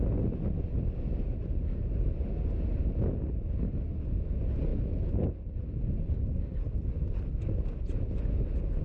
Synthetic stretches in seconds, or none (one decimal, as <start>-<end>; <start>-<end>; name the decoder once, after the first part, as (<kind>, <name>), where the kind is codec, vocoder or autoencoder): none